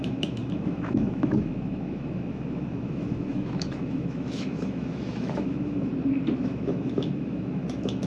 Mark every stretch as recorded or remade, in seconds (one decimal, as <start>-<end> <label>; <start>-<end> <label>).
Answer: 0.0-5.9 remade; 5.9-6.5 recorded; 6.5-8.1 remade